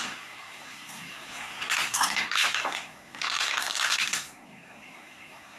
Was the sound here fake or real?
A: fake